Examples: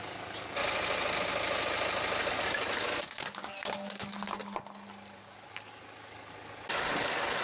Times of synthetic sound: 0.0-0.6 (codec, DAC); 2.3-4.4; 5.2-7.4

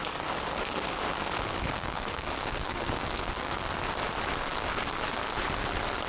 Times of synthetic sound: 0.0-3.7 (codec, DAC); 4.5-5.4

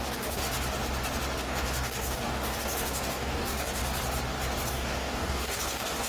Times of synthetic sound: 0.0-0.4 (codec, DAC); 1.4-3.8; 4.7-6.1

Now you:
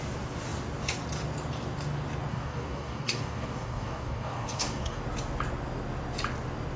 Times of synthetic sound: 2.3-5.0 (codec, DAC)

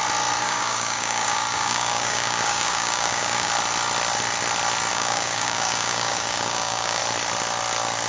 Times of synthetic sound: 0.4-3.5 (codec, DAC); 4.9-7.0

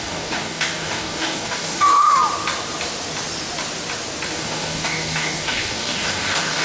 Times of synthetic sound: 0.0-2.2 (codec, DAC); 4.3-6.6